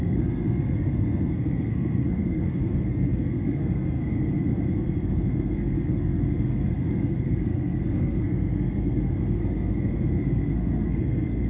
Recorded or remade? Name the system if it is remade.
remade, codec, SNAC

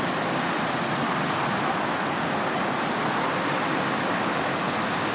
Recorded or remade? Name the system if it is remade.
recorded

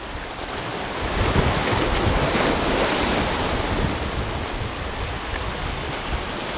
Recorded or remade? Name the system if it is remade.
recorded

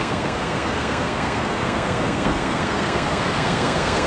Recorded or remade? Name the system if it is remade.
remade, codec, SNAC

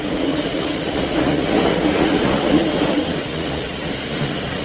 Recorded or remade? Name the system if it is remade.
remade, vocoder, Vocos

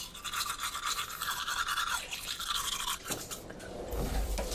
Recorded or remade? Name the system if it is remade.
recorded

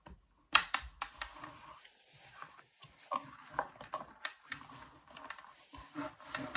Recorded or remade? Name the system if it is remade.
recorded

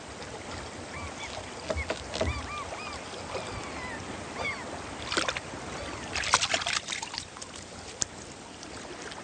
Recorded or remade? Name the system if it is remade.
recorded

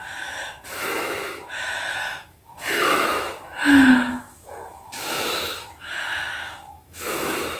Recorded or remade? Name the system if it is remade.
remade, autoencoder, DAC-VAE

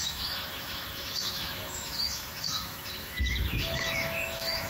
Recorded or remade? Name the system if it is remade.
remade, autoencoder, DAC-VAE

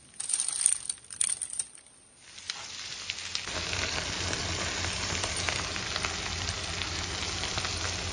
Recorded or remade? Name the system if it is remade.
recorded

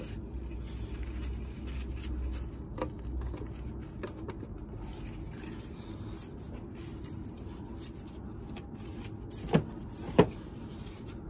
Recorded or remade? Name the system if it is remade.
recorded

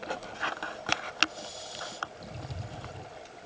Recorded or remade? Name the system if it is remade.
recorded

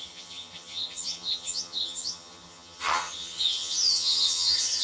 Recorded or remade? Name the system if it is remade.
remade, vocoder, HiFi-GAN